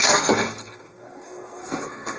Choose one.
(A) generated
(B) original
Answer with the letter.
A